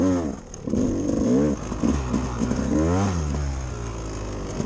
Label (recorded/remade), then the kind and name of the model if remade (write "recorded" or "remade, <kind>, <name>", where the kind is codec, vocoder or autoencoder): recorded